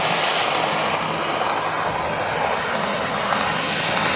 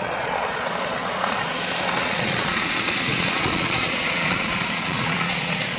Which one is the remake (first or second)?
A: second